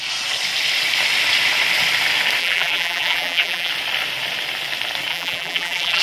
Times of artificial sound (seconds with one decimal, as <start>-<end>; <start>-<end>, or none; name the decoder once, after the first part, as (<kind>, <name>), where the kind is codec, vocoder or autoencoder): 2.4-3.7 (vocoder, BigVGAN v2); 5.1-6.0